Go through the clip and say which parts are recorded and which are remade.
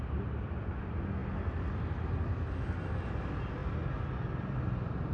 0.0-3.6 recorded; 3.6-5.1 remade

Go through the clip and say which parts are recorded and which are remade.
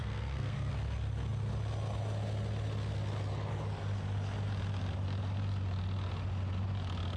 0.0-0.7 remade; 0.7-7.2 recorded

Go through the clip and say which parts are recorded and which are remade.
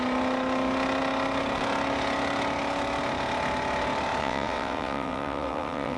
0.0-4.2 recorded; 4.2-6.0 remade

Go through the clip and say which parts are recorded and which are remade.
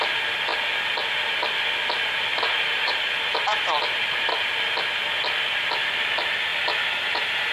0.0-2.3 recorded; 2.3-4.3 remade; 4.3-6.5 recorded; 6.5-7.5 remade